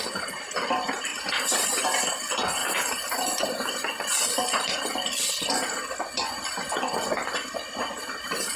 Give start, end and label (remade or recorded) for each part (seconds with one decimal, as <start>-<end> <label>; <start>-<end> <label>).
0.0-8.6 recorded